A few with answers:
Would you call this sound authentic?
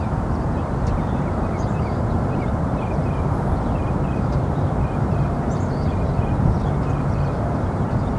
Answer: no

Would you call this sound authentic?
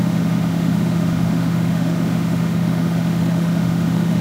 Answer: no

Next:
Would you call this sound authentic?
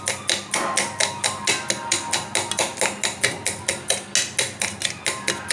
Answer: yes